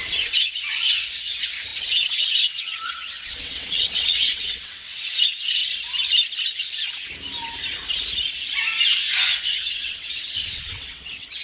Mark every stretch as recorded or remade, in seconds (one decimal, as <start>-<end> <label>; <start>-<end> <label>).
0.0-5.6 remade; 5.6-9.2 recorded; 9.2-11.4 remade